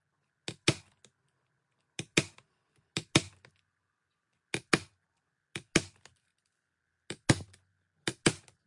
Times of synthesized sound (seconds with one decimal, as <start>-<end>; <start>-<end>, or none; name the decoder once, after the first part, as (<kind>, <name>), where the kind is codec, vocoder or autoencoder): none